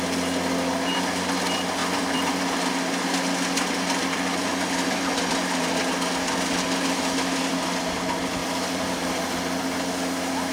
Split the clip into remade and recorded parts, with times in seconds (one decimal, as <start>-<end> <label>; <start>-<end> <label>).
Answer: 0.0-1.8 recorded; 1.8-2.4 remade; 2.4-4.4 recorded; 4.4-5.8 remade; 5.8-8.4 recorded; 8.4-9.2 remade; 9.2-10.5 recorded